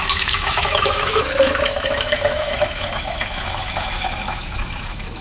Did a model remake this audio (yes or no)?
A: yes